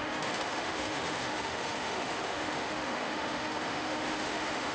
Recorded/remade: remade